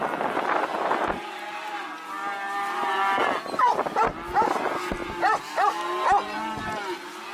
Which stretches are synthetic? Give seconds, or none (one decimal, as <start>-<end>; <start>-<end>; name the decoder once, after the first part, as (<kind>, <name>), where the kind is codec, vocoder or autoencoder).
none